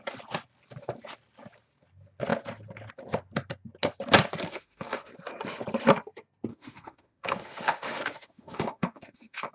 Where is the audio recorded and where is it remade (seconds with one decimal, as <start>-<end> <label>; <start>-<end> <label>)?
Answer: 0.0-4.5 recorded; 4.5-5.1 remade; 5.1-6.5 recorded; 6.5-9.5 remade